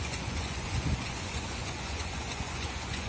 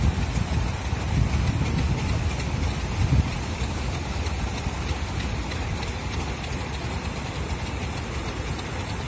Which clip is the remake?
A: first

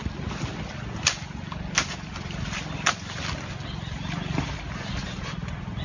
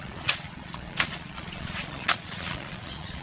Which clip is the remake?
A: second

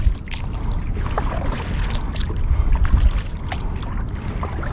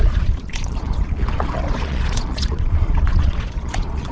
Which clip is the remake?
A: second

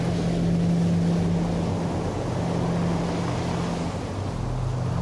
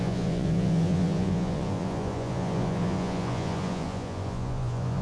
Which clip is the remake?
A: second